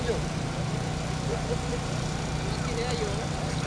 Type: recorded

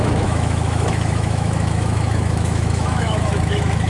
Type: remade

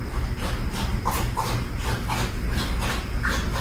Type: recorded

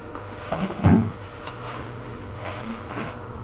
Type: remade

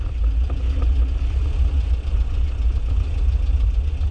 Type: recorded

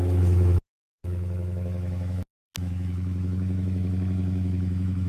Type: remade